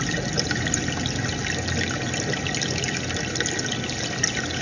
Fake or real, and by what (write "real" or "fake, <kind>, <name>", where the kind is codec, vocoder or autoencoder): real